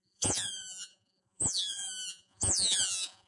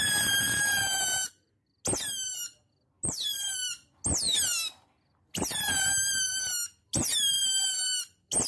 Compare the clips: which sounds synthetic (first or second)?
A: first